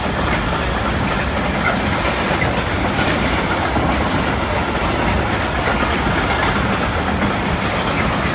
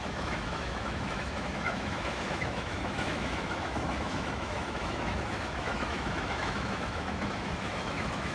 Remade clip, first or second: second